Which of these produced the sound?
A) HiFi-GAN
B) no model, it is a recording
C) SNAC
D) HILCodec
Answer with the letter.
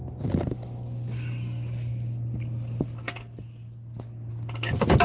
B